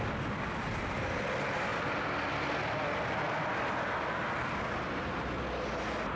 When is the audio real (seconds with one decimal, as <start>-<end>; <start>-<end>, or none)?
0.0-6.2